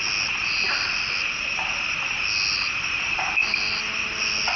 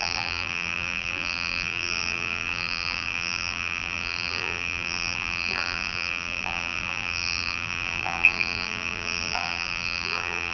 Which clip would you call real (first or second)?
first